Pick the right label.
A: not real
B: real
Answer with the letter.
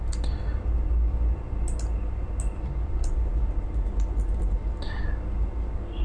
B